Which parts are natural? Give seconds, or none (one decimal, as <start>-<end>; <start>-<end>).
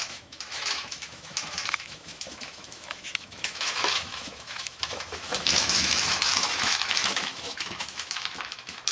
none